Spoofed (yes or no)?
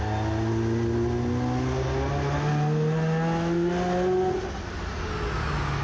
no